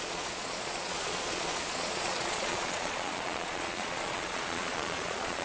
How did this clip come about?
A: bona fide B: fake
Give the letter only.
B